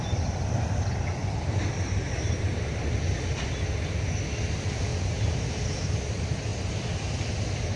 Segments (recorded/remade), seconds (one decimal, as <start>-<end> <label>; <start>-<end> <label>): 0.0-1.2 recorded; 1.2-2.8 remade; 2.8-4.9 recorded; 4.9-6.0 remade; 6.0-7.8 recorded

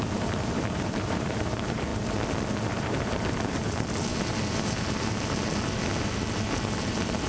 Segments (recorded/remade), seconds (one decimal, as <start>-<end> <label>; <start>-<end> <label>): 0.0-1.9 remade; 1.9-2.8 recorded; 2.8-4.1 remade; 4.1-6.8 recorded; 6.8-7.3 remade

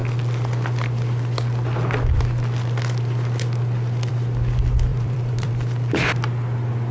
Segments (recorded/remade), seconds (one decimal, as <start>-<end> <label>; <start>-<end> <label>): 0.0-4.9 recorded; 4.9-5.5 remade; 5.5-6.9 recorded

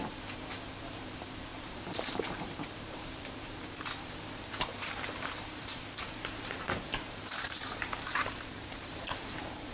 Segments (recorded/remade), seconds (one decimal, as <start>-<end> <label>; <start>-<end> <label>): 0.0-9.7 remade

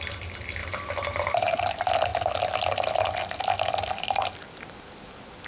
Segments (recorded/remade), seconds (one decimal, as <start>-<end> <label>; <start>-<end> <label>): 0.0-0.6 recorded; 0.6-1.6 remade; 1.6-5.5 recorded

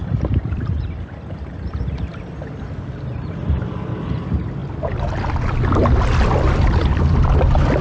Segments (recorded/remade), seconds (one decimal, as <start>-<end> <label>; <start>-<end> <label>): 0.0-4.6 remade; 4.6-6.4 recorded; 6.4-7.8 remade

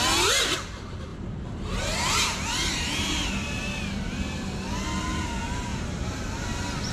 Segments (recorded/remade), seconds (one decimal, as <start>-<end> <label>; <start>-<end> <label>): 0.0-1.1 recorded; 1.1-3.3 remade; 3.3-5.7 recorded; 5.7-6.2 remade; 6.2-6.9 recorded

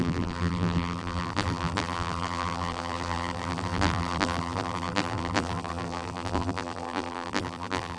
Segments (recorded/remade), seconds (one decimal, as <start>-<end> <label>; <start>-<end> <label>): 0.0-8.0 remade